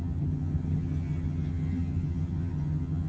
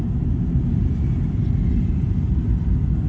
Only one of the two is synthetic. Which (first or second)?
first